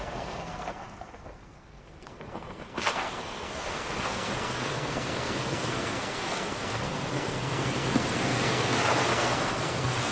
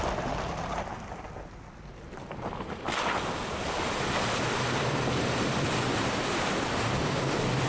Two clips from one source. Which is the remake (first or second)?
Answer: first